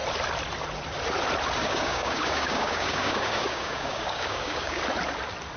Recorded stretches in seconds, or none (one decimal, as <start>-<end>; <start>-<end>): 0.0-1.6; 4.8-5.6